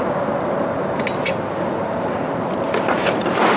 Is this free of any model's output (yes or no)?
yes